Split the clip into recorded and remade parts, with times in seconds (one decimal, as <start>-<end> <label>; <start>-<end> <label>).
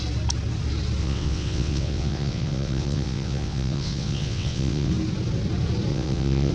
0.0-1.0 recorded; 1.0-4.9 remade; 4.9-5.9 recorded; 5.9-6.5 remade